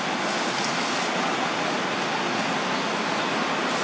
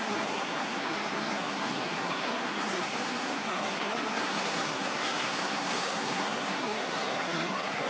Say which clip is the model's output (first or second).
second